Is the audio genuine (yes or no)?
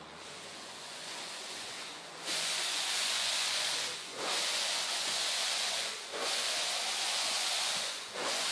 no